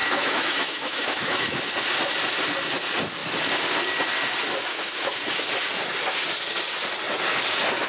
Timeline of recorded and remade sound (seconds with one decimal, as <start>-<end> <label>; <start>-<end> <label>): 0.0-1.6 remade; 1.6-4.7 recorded; 4.7-5.2 remade; 5.2-7.9 recorded